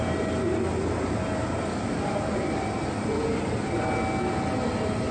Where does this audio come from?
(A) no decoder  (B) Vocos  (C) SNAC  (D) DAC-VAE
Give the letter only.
A